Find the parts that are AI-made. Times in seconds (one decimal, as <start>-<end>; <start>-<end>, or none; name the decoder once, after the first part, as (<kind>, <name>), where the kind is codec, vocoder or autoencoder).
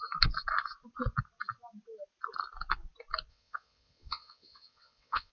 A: 3.3-5.3 (vocoder, WaveNeXt)